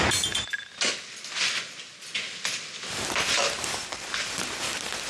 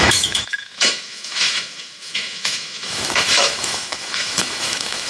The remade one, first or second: second